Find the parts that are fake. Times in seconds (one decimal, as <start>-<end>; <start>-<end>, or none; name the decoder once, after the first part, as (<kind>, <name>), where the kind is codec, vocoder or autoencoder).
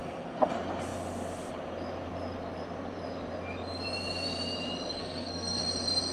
0.0-0.5 (codec, SNAC); 5.0-5.6